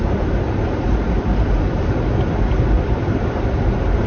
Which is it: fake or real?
real